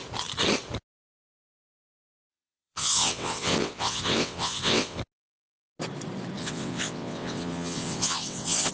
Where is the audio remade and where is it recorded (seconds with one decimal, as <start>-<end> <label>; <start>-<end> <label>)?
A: 0.0-2.3 recorded; 2.3-5.0 remade; 5.0-6.4 recorded; 6.4-8.7 remade